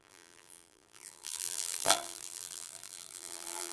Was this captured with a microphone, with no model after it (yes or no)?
no